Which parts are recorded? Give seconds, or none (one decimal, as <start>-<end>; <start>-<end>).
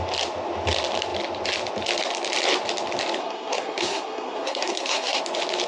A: 0.0-3.2; 5.2-5.7